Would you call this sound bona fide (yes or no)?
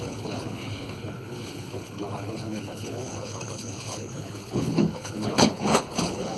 no